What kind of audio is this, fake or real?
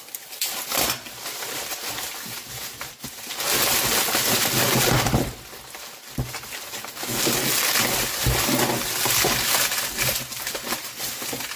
real